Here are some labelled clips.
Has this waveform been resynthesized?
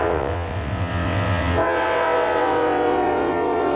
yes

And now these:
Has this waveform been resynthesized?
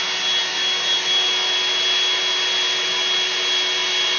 no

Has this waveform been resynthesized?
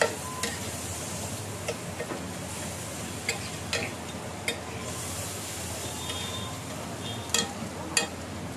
no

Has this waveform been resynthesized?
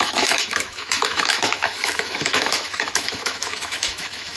yes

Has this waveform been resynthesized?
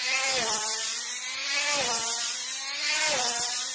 yes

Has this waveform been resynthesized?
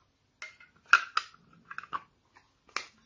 no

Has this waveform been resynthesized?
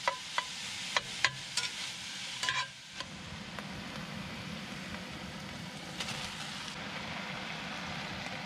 no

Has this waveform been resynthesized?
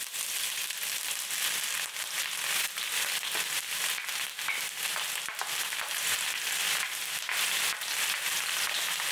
no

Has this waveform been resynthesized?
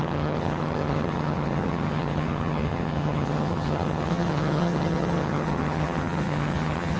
yes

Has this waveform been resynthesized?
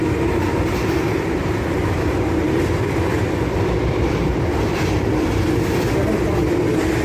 yes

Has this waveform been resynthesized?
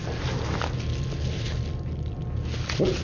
no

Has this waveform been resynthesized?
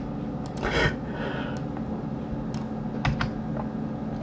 no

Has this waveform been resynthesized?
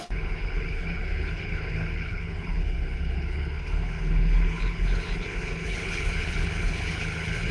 yes